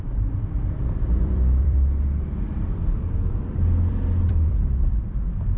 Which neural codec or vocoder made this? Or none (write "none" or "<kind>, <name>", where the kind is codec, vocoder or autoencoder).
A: vocoder, BigVGAN v2